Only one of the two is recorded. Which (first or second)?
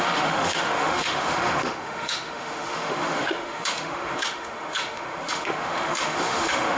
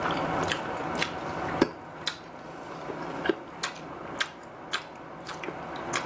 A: second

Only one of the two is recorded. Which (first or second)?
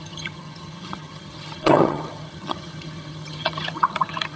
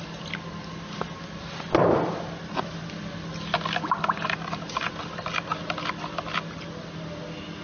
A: second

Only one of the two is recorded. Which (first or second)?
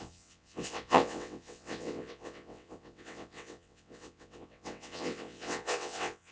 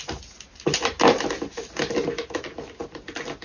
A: second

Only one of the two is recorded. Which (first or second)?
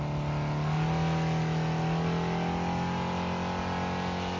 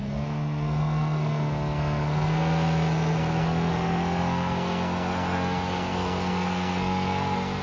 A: first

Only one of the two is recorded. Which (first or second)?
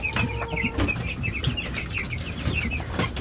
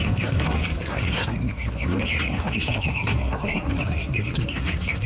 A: first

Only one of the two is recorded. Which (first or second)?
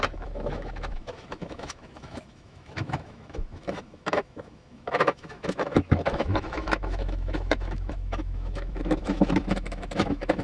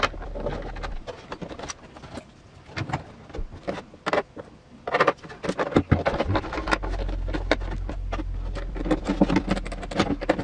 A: second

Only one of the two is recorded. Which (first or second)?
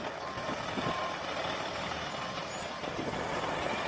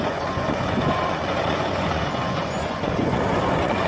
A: first